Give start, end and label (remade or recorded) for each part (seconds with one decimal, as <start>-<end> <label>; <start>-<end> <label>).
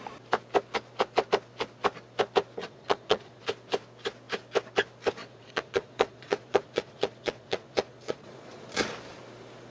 0.0-2.6 recorded; 2.6-3.4 remade; 3.4-5.2 recorded; 5.2-8.8 remade; 8.8-9.7 recorded